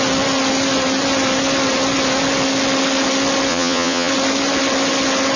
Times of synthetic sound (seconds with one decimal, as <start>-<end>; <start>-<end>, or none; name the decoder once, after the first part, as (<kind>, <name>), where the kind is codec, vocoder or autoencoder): 3.5-4.1 (vocoder, Vocos)